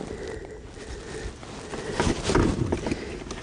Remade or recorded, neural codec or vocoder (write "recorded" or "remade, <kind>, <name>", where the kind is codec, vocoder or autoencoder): recorded